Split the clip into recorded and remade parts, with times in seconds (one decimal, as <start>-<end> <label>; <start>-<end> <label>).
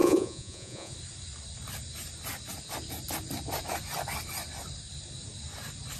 0.0-0.9 remade; 0.9-6.0 recorded